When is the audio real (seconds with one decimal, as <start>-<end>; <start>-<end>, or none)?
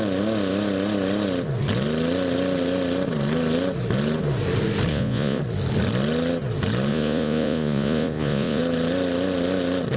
0.0-4.9; 5.4-6.9; 8.6-10.0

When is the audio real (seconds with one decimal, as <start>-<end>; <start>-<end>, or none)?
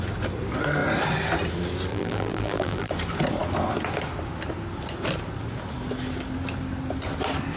0.0-1.9; 2.9-7.6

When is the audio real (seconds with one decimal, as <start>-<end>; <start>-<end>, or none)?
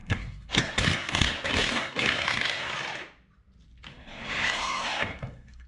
2.7-3.9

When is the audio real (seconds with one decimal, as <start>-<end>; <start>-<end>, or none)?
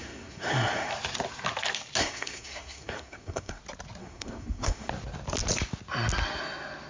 0.9-2.0; 3.6-4.0; 4.9-6.9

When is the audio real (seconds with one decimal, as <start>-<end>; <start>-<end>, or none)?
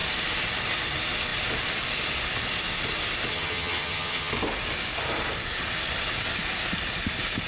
0.0-3.3; 4.3-7.5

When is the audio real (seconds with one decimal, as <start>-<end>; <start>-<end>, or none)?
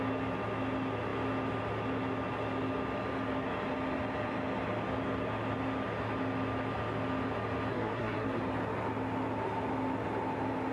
0.0-7.7; 8.4-10.7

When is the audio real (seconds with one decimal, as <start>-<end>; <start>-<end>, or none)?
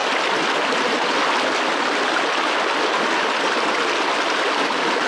0.0-5.1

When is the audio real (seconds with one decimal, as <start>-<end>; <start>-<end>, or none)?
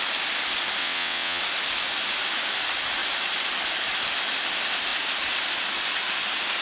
0.0-0.8; 1.4-6.6